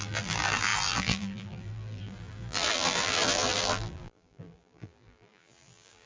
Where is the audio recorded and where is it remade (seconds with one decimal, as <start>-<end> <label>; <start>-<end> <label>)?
0.0-6.1 remade